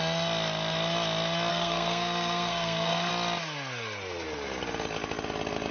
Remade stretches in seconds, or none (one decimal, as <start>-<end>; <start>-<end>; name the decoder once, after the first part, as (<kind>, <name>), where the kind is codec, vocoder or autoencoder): 1.5-3.1 (codec, SNAC)